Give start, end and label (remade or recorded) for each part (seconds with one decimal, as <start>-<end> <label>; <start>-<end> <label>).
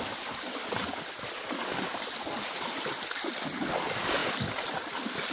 0.0-1.9 recorded; 1.9-3.3 remade; 3.3-5.3 recorded